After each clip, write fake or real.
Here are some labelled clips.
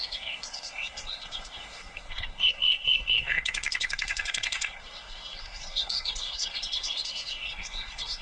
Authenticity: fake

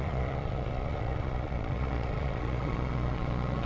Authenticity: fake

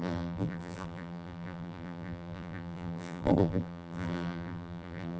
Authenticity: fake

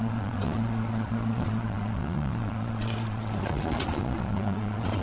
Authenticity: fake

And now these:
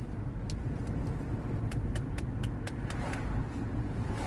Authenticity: real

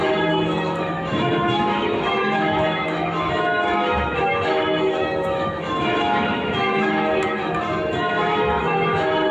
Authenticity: fake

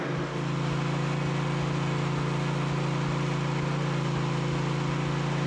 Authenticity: real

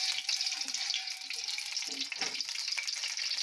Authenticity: real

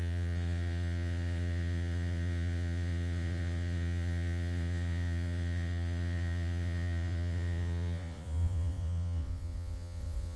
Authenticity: fake